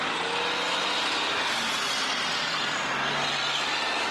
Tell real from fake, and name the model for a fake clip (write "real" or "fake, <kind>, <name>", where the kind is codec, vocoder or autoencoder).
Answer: real